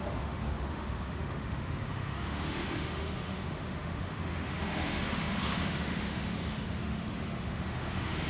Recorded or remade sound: remade